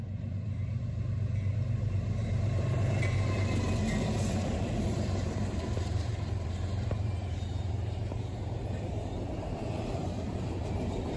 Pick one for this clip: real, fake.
fake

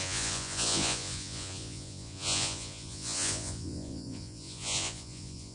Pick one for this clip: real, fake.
fake